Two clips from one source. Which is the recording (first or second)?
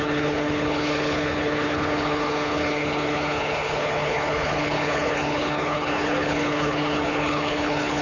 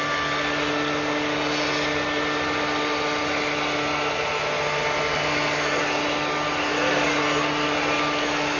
second